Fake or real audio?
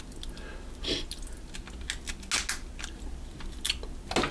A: real